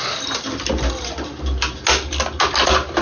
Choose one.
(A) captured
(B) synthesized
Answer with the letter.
A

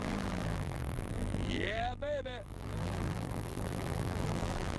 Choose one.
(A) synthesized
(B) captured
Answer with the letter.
A